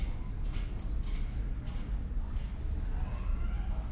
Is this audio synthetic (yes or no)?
no